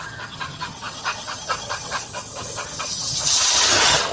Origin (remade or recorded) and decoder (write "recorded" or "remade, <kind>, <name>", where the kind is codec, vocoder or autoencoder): remade, vocoder, HiFi-GAN